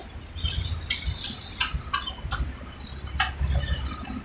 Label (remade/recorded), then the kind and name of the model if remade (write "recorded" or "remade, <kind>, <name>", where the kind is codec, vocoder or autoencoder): recorded